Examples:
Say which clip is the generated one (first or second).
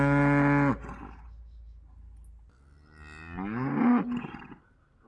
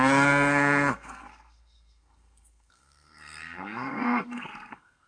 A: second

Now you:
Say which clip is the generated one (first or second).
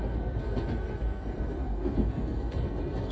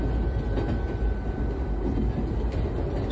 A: first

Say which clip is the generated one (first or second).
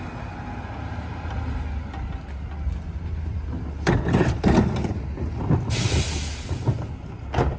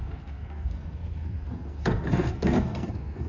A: second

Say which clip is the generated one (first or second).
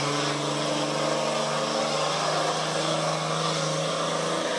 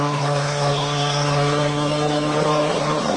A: second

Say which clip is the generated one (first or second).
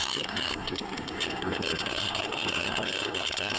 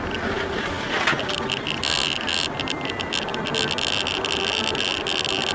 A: first